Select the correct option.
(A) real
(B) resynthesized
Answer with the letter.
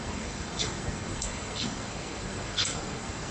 B